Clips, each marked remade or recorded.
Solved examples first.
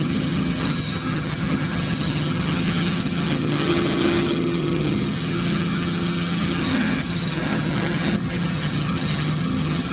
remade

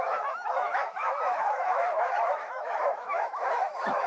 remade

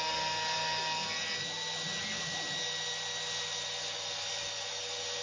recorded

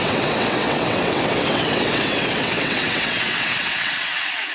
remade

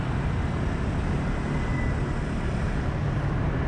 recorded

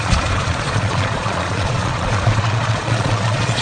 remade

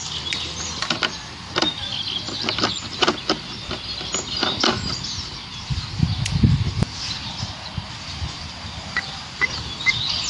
recorded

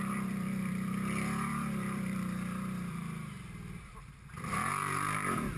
remade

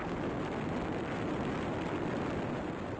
recorded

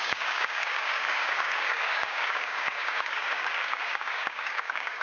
remade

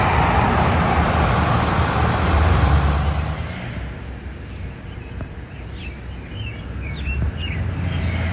recorded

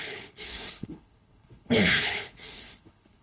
remade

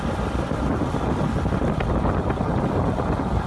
remade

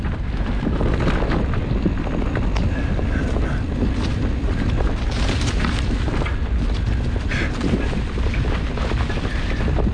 recorded